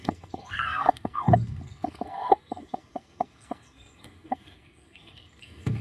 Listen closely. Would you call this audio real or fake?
fake